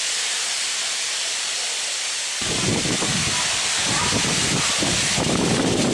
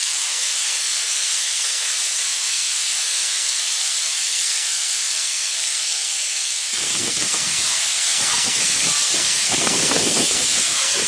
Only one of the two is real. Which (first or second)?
first